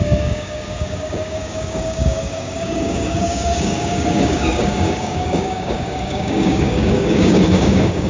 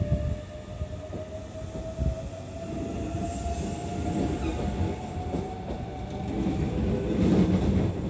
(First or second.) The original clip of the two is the second